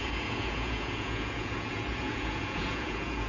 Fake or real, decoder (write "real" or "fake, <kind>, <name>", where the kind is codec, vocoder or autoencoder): fake, vocoder, Vocos